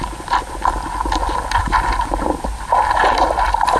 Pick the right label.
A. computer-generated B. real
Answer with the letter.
B